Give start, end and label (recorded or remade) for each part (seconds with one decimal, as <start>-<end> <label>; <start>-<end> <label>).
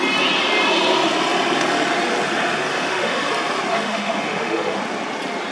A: 0.0-2.7 recorded; 2.7-3.3 remade; 3.3-3.7 recorded; 3.7-4.8 remade; 4.8-5.5 recorded